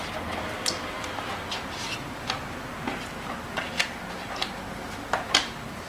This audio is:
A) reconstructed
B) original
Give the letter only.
B